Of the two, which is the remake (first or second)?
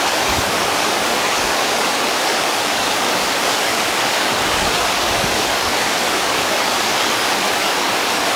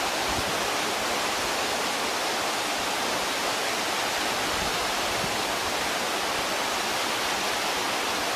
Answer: first